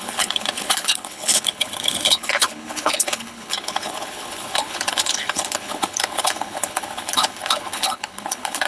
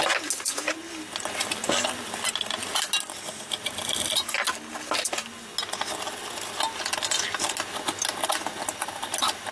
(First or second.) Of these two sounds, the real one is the second